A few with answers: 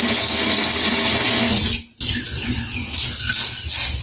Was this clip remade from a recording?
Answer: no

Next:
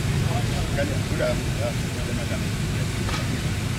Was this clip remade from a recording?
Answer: no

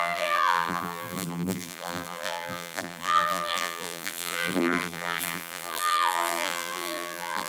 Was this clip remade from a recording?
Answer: yes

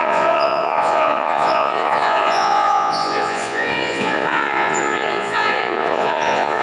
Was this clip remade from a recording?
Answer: yes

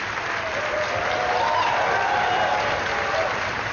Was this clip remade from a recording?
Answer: no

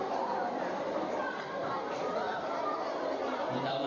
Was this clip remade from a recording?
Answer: yes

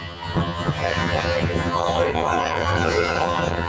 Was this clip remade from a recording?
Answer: yes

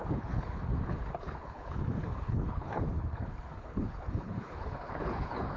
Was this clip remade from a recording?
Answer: yes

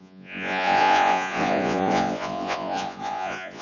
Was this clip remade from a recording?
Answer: yes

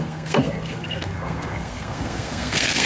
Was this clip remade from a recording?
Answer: yes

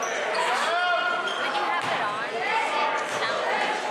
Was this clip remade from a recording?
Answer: no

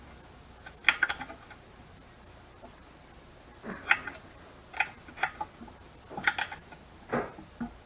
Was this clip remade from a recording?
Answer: no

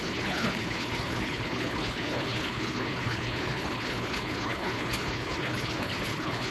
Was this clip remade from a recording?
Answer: yes